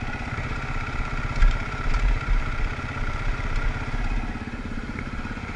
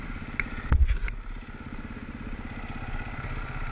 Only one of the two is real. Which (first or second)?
second